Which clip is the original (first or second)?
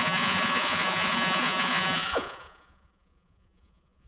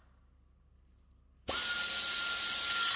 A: second